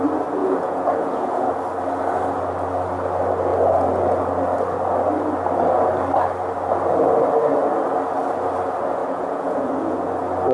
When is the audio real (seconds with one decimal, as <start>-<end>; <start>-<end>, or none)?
0.0-0.4; 1.5-9.0; 10.1-10.5